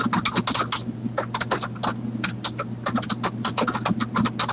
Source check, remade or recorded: recorded